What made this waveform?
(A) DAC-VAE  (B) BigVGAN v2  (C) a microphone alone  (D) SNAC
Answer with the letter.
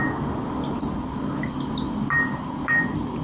C